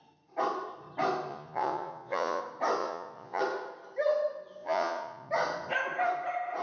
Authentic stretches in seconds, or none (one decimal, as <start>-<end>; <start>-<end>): 0.0-1.3; 2.4-2.8; 3.4-4.6; 5.3-6.6